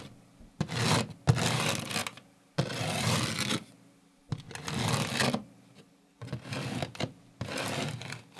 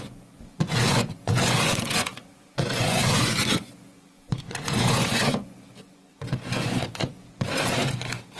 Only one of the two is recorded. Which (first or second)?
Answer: first